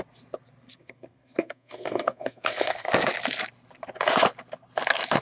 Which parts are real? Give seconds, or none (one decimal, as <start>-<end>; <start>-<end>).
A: 0.0-0.7; 2.9-5.2